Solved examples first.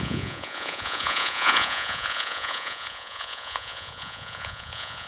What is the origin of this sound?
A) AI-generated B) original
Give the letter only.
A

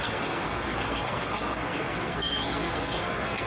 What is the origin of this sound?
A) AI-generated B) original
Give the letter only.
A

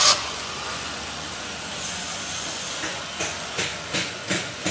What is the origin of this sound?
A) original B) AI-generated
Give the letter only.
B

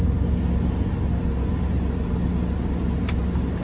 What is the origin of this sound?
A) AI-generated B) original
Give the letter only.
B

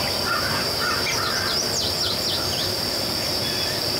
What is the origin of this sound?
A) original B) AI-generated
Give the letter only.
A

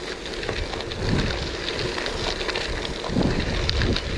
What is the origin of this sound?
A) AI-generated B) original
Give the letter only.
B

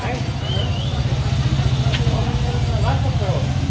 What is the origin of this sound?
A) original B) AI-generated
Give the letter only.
A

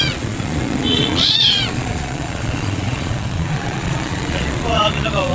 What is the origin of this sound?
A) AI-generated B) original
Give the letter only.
A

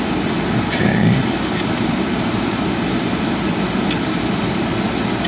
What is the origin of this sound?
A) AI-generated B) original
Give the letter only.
A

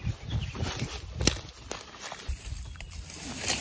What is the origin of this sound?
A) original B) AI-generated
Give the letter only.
A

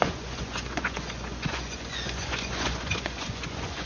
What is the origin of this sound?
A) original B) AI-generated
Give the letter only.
B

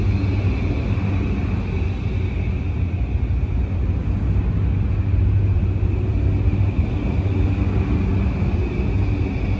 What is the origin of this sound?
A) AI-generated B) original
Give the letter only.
B